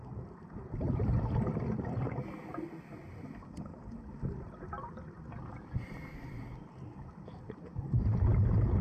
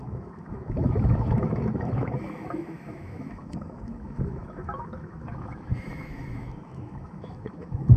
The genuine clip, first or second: first